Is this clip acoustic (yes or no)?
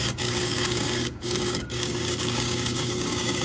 no